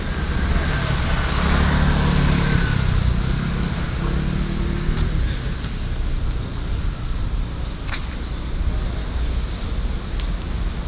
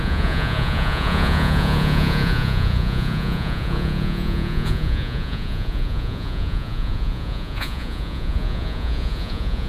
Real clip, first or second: first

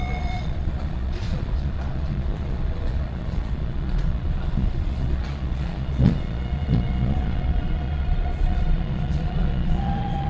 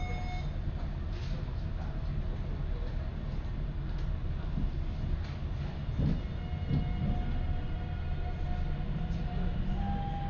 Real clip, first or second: second